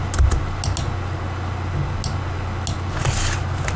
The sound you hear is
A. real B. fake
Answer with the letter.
A